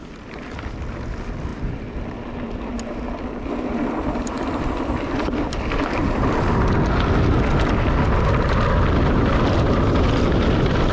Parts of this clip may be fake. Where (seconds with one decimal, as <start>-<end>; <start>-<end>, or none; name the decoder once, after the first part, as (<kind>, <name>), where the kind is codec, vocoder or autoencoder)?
none